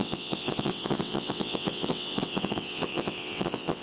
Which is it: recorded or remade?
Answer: remade